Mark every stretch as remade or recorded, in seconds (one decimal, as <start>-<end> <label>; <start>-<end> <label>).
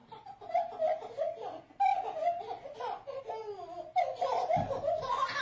0.0-5.4 recorded